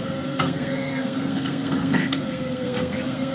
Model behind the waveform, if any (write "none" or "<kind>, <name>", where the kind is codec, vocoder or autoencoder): codec, SNAC